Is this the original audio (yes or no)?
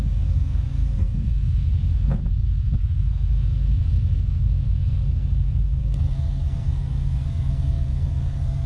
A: no